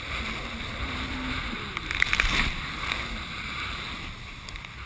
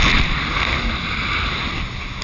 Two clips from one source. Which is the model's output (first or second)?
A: first